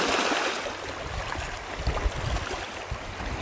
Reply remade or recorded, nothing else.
recorded